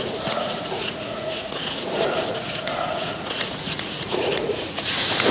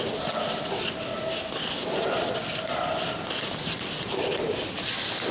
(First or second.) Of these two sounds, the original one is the second